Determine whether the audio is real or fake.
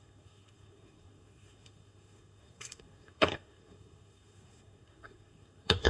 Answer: fake